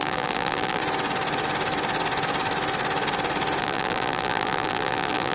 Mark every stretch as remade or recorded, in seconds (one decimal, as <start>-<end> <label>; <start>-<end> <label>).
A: 0.0-0.8 remade; 0.8-3.6 recorded; 3.6-5.3 remade